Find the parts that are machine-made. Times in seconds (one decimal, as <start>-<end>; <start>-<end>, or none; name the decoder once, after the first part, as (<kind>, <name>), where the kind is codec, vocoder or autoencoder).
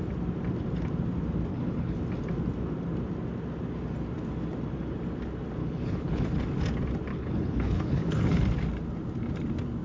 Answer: 1.5-2.0 (codec, HILCodec); 5.6-6.3; 7.1-8.4